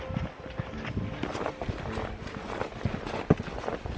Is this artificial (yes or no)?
no